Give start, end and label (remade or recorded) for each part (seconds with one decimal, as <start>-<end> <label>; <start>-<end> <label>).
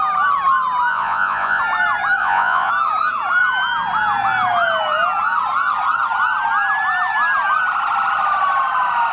0.0-0.9 recorded; 0.9-1.6 remade; 1.6-2.2 recorded; 2.2-2.7 remade; 2.7-9.1 recorded